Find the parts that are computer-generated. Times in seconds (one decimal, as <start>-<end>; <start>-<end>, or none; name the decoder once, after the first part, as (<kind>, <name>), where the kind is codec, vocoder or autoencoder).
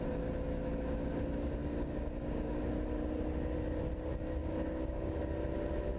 1.6-2.6 (codec, DAC); 4.4-5.2